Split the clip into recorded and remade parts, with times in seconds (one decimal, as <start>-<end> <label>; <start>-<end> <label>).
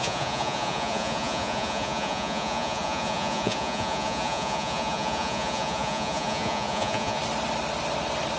0.0-7.2 remade; 7.2-8.4 recorded